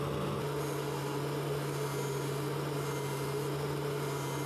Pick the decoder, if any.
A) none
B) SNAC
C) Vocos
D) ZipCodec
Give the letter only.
A